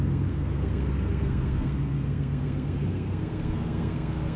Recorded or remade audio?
remade